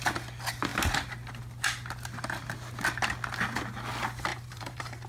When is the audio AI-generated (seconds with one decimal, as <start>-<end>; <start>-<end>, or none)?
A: 4.3-5.1